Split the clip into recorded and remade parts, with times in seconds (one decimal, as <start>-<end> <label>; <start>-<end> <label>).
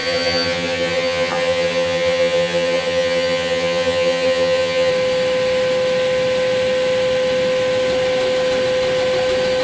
0.0-4.9 remade; 4.9-9.6 recorded